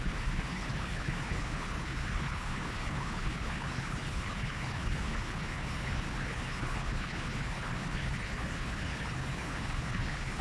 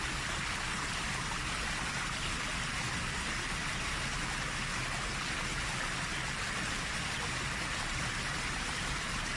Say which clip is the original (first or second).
second